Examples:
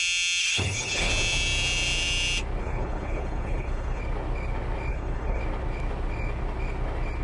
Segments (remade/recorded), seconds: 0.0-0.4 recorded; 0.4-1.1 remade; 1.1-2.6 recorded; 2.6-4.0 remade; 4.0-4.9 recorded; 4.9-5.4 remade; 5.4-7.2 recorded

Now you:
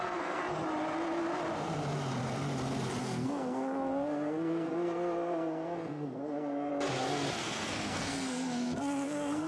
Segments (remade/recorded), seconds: 0.0-0.4 remade; 0.4-3.0 recorded; 3.0-6.7 remade; 6.7-7.4 recorded; 7.4-9.5 remade

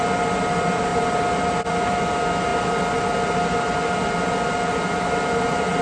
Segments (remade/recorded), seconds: 0.0-5.8 recorded